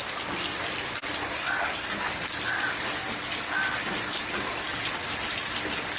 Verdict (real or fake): real